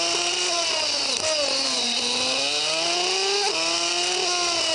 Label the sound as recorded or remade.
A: recorded